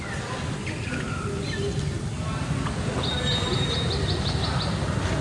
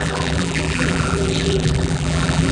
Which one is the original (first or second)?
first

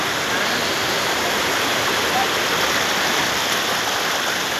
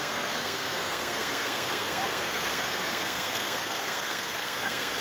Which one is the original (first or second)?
first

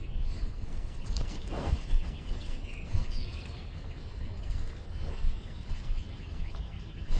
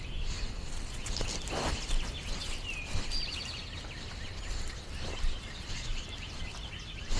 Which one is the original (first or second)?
second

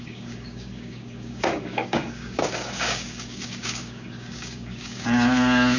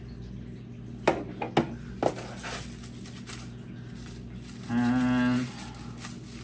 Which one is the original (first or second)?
second